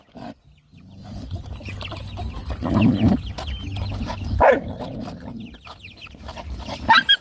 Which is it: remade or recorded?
recorded